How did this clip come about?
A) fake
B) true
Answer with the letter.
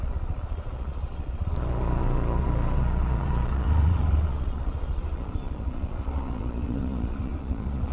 A